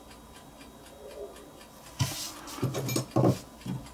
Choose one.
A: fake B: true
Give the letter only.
B